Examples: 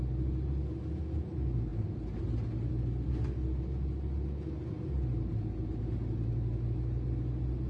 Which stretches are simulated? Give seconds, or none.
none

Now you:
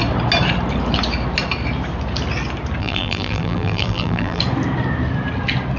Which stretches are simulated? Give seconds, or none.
2.8-4.4 (vocoder, BigVGAN v2)

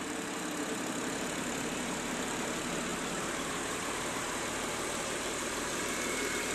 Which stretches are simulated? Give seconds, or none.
0.0-6.5 (vocoder, BigVGAN v2)

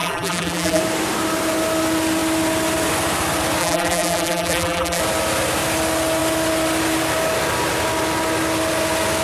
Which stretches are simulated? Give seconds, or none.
0.0-0.8 (vocoder, BigVGAN v2); 3.6-5.0

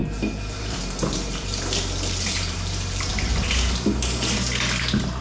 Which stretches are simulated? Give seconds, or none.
0.0-3.1 (vocoder, BigVGAN v2)

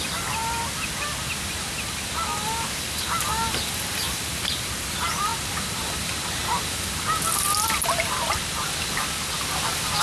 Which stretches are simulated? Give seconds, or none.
0.0-0.4 (vocoder, BigVGAN v2); 2.8-5.3

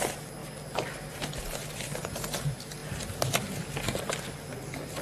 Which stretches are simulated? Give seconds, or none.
0.4-1.4 (vocoder, BigVGAN v2)

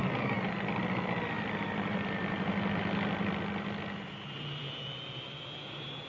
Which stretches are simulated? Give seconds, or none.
none